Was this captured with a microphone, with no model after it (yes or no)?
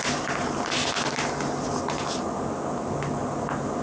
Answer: yes